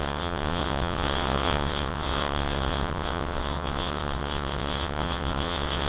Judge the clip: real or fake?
fake